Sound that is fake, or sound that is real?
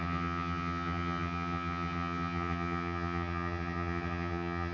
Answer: fake